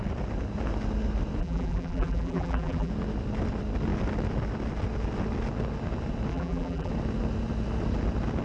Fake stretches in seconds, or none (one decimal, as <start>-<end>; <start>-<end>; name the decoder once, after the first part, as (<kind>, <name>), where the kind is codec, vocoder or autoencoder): 1.4-2.9 (vocoder, BigVGAN v2); 6.3-6.9